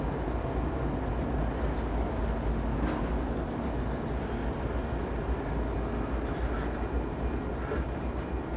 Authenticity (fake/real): real